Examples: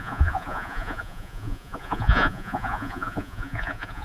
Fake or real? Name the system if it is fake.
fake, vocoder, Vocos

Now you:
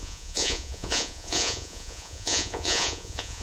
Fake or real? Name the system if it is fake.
fake, vocoder, Vocos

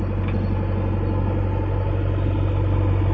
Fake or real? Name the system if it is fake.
real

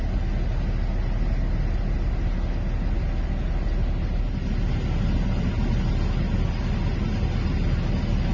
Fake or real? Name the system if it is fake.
real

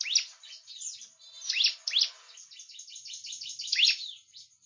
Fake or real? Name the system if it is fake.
real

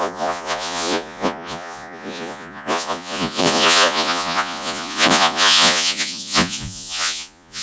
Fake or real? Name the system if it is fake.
fake, vocoder, Vocos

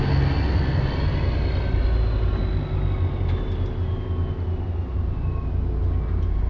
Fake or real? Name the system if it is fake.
real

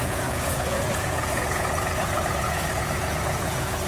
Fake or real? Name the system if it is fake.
fake, vocoder, Vocos